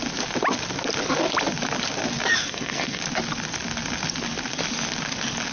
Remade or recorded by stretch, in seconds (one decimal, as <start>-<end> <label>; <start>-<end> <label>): 0.0-2.4 recorded; 2.4-3.0 remade; 3.0-5.5 recorded